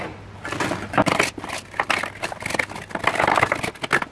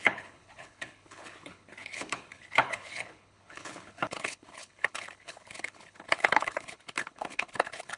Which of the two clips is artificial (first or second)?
second